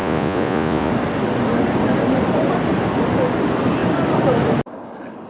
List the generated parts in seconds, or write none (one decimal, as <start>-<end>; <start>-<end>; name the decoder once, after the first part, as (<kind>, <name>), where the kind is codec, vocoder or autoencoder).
0.0-0.9 (vocoder, Vocos)